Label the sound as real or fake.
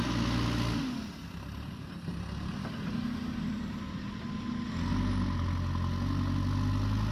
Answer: real